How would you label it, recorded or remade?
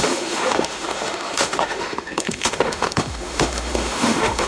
remade